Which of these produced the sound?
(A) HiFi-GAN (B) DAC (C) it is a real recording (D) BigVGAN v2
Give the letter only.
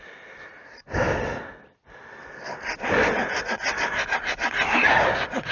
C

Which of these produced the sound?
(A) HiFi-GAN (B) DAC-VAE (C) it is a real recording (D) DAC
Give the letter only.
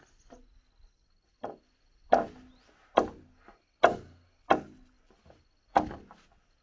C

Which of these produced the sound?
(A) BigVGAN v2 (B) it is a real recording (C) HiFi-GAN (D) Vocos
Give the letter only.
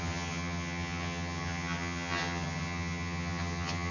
C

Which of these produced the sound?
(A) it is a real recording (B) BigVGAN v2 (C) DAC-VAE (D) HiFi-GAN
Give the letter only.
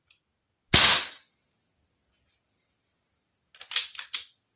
A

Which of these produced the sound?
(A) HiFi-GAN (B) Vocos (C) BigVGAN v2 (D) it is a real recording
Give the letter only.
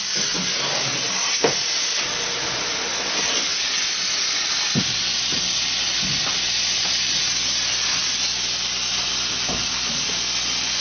D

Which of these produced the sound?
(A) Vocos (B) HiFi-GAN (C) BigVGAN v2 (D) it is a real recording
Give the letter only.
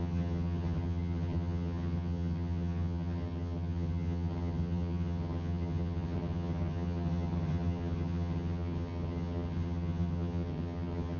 B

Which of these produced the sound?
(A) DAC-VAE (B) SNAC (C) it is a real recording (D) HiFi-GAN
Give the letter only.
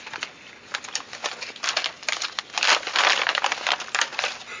C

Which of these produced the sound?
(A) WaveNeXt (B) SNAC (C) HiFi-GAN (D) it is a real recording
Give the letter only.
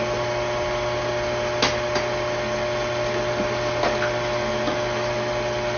D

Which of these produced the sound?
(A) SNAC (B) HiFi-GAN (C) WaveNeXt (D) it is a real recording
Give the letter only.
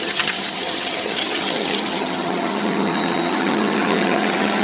B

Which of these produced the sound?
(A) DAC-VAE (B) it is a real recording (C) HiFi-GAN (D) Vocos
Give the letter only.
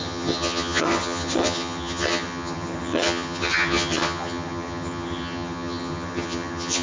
C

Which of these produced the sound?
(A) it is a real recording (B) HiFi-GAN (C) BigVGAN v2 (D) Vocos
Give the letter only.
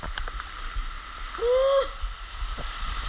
A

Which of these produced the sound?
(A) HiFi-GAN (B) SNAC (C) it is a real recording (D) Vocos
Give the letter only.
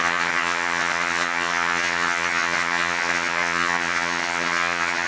A